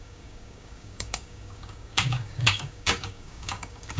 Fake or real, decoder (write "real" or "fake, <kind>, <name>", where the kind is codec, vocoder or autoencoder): fake, codec, DAC